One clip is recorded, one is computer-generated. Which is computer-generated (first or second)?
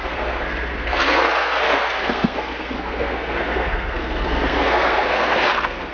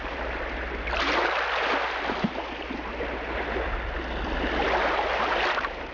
first